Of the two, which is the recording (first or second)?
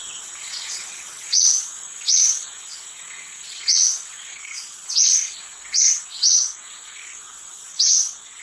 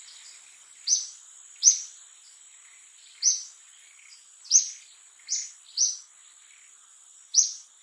second